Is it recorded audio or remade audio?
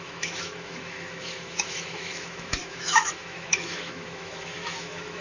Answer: remade